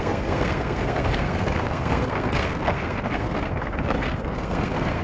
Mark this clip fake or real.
fake